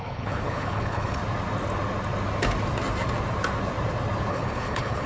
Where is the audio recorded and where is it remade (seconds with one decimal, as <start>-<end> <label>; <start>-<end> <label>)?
0.0-1.2 remade; 1.2-4.3 recorded; 4.3-5.1 remade